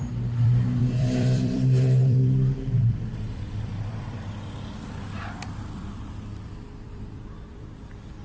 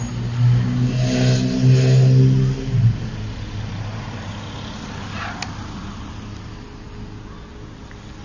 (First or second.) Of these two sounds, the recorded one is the second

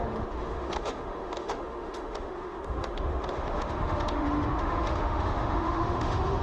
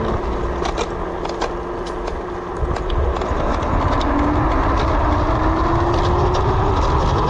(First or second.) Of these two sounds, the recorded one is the second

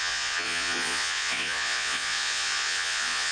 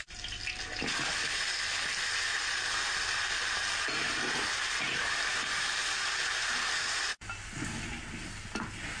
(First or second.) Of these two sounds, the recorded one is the second